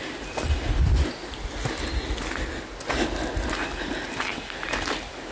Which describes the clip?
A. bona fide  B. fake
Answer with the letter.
A